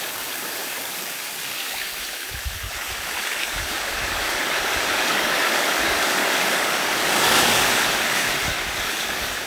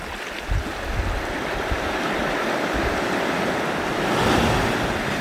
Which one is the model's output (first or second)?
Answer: first